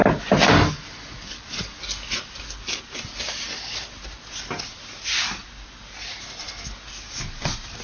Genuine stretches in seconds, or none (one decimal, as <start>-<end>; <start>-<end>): 2.8-7.8